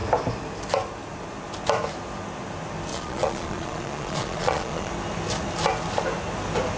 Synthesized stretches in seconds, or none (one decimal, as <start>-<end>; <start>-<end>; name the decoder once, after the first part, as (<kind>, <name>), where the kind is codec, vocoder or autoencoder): 2.9-4.9 (vocoder, Vocos)